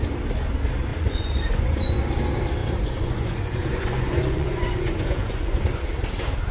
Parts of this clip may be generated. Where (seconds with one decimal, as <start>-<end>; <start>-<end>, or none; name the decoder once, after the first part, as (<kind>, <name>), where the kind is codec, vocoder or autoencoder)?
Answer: 0.9-2.0 (vocoder, Vocos); 2.6-5.6

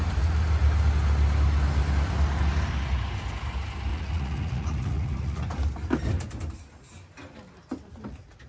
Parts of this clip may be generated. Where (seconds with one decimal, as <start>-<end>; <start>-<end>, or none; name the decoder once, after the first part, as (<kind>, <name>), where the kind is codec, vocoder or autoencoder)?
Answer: 3.9-5.4 (vocoder, Vocos)

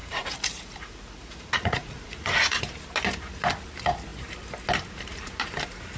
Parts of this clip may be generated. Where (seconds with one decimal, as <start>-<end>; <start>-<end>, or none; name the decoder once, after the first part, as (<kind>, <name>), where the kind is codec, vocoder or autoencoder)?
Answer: 0.0-2.6 (vocoder, Vocos)